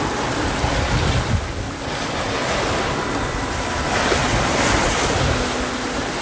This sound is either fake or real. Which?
real